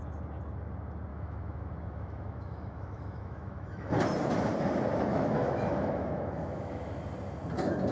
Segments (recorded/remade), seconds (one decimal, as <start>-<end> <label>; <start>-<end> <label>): 0.0-1.1 recorded; 1.1-3.9 remade; 3.9-5.1 recorded; 5.1-7.0 remade; 7.0-7.9 recorded

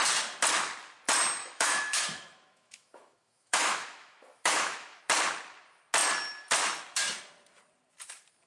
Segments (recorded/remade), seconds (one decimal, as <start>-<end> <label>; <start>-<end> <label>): 0.0-1.4 recorded; 1.4-5.0 remade; 5.0-8.5 recorded

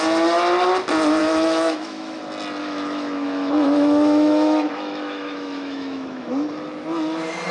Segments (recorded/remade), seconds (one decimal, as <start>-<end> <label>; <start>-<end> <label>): 0.0-1.2 recorded; 1.2-2.2 remade; 2.2-2.6 recorded; 2.6-6.3 remade; 6.3-7.5 recorded

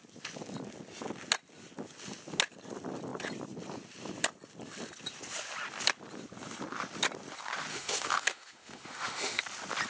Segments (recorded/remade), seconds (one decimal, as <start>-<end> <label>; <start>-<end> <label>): 0.0-7.7 recorded; 7.7-9.4 remade; 9.4-9.9 recorded